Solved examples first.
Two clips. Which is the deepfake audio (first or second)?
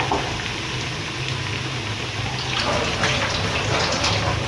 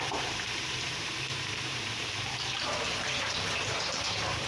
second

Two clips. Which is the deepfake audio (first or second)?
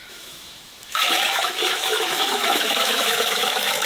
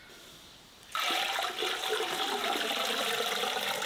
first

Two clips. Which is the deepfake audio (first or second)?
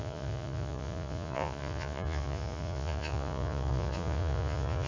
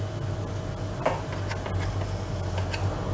first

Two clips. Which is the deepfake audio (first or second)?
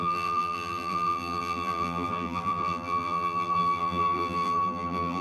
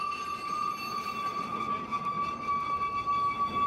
first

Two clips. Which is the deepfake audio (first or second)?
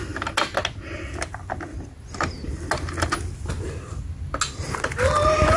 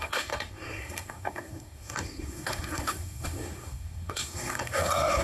second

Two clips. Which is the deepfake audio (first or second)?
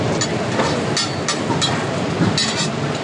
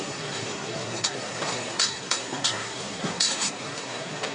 second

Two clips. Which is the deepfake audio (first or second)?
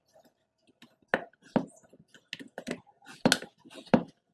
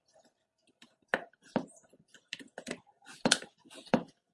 second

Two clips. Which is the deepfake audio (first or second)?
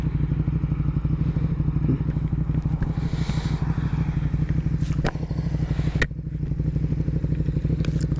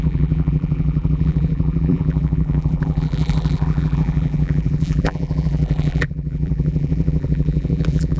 second